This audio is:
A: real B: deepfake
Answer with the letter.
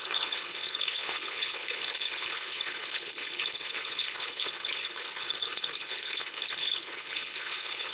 B